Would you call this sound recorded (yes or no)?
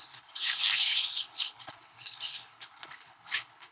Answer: no